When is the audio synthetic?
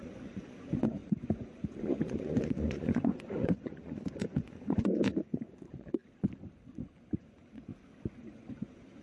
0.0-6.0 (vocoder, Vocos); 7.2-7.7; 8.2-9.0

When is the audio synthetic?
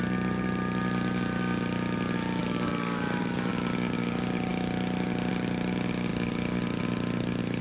2.4-3.5 (codec, DAC)